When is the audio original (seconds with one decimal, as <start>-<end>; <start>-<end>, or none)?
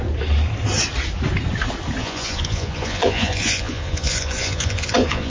0.0-2.0